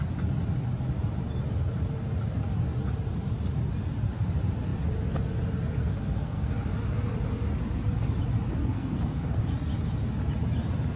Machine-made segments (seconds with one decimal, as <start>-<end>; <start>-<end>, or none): 5.8-6.5; 8.6-9.4